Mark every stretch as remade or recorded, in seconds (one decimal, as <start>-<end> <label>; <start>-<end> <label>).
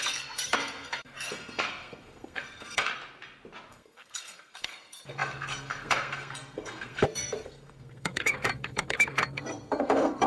0.0-2.9 remade; 2.9-3.7 recorded; 3.7-10.3 remade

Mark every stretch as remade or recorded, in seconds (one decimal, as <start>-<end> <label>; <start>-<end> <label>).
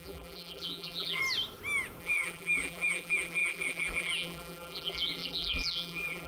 0.0-1.2 remade; 1.2-2.0 recorded; 2.0-6.3 remade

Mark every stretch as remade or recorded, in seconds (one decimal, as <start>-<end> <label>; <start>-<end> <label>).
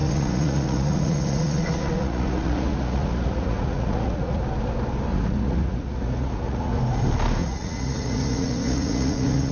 0.0-4.4 remade; 4.4-5.1 recorded; 5.1-6.8 remade; 6.8-7.4 recorded; 7.4-9.5 remade